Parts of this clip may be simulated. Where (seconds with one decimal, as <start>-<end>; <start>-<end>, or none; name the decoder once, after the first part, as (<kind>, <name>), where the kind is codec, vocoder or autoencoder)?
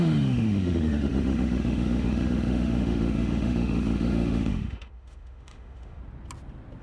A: 0.0-6.0 (autoencoder, DAC-VAE)